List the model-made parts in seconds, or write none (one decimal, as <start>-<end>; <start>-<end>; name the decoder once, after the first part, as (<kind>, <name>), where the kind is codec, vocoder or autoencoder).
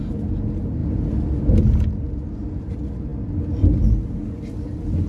none